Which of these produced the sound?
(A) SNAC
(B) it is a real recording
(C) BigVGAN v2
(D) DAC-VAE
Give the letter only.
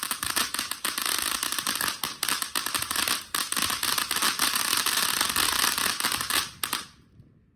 B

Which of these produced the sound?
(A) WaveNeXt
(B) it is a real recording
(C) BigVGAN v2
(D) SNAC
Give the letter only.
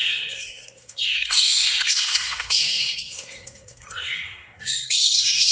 D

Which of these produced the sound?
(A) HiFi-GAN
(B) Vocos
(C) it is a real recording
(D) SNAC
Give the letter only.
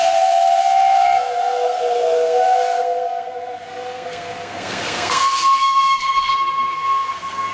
D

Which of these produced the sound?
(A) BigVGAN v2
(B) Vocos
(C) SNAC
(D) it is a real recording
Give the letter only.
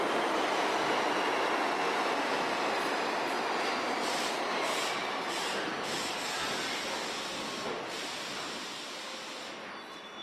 D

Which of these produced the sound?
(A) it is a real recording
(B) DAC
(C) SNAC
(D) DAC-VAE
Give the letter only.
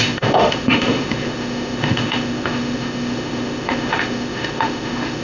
D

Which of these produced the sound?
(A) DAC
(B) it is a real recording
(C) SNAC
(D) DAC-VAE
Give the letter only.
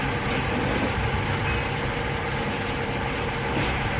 B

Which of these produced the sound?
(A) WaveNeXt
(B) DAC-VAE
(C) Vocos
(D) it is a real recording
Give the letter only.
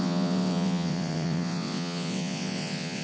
A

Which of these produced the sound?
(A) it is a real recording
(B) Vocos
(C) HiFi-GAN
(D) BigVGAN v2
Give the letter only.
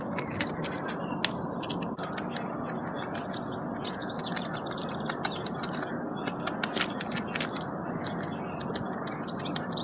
A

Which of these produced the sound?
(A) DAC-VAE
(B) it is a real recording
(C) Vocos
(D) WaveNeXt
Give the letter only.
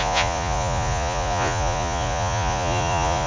C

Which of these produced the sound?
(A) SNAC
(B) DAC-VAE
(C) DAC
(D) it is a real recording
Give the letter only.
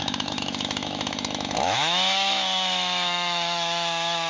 B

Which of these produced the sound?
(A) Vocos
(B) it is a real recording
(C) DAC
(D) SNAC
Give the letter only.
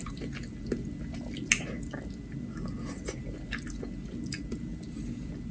B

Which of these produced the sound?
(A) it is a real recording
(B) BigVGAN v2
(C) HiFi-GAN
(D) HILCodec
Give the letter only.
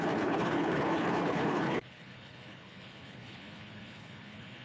D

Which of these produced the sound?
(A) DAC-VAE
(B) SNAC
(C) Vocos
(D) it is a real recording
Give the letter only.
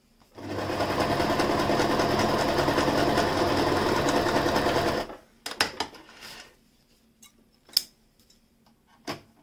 D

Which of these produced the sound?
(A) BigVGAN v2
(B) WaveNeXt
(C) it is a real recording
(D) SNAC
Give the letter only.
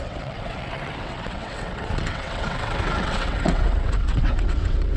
B